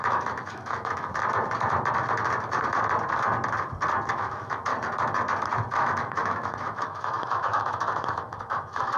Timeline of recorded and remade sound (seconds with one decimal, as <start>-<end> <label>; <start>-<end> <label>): 0.0-1.1 remade; 1.1-4.1 recorded; 4.1-4.7 remade; 4.7-5.7 recorded; 5.7-9.0 remade